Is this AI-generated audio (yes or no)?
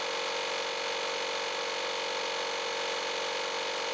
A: no